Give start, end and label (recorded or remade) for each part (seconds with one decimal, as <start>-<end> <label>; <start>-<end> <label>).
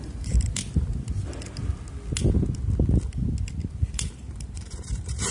0.0-0.6 remade; 0.6-3.7 recorded; 3.7-5.3 remade